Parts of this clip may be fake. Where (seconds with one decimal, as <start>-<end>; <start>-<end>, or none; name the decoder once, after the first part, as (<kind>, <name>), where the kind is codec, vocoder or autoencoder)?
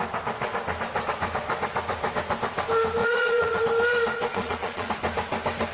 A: 3.0-3.6 (vocoder, Vocos); 4.3-4.9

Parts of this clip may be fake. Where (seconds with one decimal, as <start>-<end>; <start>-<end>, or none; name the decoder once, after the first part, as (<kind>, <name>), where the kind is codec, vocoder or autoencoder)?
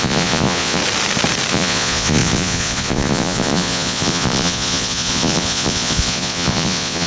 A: 0.0-0.8 (vocoder, Vocos); 1.5-7.1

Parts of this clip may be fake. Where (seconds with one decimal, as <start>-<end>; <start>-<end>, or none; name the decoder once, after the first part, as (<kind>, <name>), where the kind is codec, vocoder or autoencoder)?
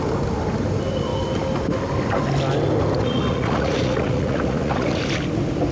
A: 3.0-5.0 (vocoder, Vocos)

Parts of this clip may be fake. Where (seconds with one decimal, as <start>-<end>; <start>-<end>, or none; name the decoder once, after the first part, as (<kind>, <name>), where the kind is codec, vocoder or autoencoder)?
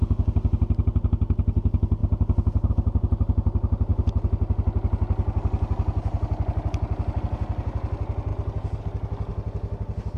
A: none